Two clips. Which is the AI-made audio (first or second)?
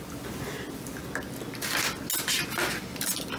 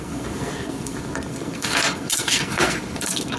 second